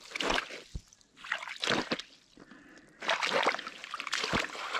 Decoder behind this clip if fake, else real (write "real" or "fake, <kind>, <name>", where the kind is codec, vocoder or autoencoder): real